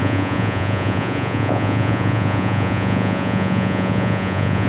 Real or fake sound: fake